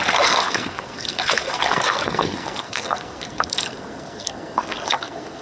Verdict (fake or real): fake